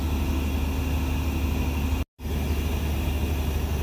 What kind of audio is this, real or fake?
real